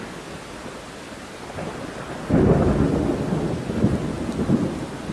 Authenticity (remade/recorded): recorded